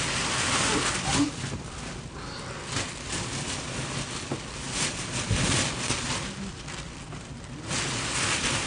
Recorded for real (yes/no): yes